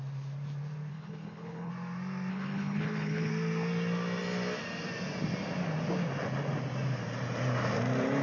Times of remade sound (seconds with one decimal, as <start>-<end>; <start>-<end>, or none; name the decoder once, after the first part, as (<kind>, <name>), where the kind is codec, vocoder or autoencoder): 0.9-1.7 (codec, HILCodec); 2.3-3.3